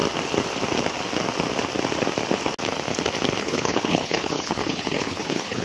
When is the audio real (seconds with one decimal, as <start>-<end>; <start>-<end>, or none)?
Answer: 0.0-3.4